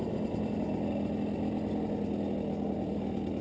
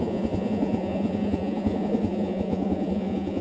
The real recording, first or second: first